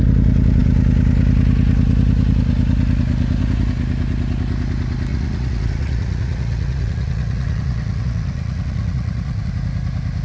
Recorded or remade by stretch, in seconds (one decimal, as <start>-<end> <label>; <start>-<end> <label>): 0.0-5.1 recorded; 5.1-9.5 remade; 9.5-10.2 recorded